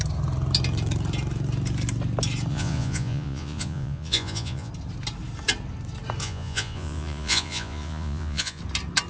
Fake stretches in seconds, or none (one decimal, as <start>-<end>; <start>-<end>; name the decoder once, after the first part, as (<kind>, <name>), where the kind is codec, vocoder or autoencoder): 2.5-4.7 (vocoder, Vocos); 6.2-8.6